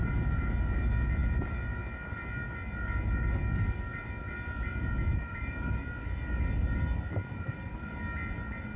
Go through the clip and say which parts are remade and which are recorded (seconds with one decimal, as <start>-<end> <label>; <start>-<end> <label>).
0.0-5.1 recorded; 5.1-5.8 remade; 5.8-7.2 recorded; 7.2-7.9 remade; 7.9-8.8 recorded